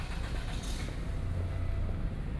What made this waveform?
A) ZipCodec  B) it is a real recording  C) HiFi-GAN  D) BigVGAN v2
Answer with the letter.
B